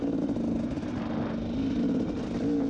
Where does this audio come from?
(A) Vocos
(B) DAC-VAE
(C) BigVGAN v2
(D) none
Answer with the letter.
D